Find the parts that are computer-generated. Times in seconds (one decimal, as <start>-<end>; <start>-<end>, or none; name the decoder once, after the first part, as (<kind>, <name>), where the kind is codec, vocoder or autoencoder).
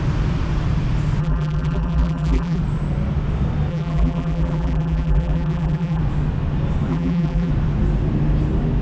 1.2-2.6 (vocoder, BigVGAN v2); 3.7-6.0; 6.9-7.5